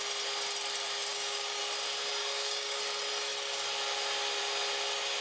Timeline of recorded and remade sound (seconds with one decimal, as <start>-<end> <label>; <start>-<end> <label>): 0.0-1.1 recorded; 1.1-1.6 remade; 1.6-2.2 recorded; 2.2-2.8 remade; 2.8-5.2 recorded